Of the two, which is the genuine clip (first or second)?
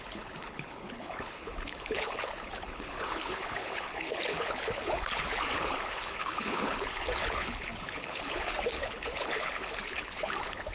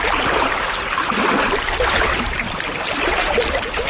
second